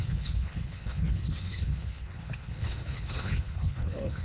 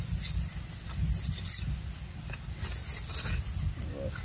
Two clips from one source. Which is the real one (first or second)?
second